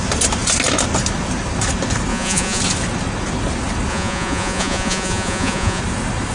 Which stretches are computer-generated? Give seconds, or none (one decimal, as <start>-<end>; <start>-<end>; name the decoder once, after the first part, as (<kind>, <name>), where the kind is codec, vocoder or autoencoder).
2.1-2.6 (vocoder, Vocos); 3.9-5.8